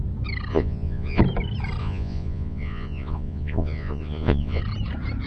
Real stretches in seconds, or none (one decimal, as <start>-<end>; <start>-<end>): 0.0-0.5; 1.2-1.8; 4.6-5.3